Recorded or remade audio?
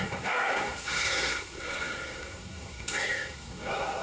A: remade